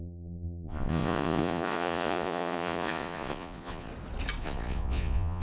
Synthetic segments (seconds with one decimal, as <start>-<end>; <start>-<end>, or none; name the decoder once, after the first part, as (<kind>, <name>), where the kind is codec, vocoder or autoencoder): 0.0-3.9 (vocoder, Vocos); 4.4-5.4